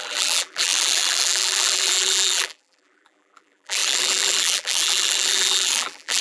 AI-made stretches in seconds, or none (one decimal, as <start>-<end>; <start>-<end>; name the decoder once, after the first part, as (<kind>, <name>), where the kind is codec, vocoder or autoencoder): 0.0-6.2 (vocoder, BigVGAN v2)